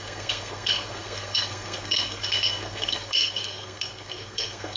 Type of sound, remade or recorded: remade